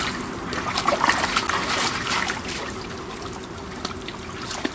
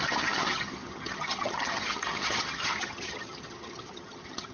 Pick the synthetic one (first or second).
second